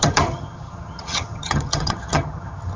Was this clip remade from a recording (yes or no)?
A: yes